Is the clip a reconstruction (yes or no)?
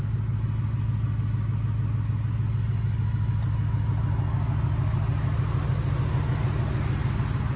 no